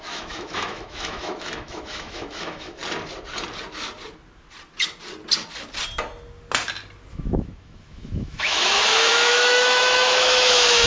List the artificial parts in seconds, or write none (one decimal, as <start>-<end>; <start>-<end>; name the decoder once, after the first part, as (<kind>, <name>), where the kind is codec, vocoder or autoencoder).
0.0-2.8 (autoencoder, DAC-VAE); 7.1-10.9